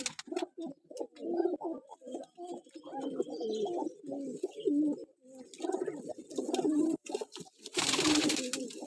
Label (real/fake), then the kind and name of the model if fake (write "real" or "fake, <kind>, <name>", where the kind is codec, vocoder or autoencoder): real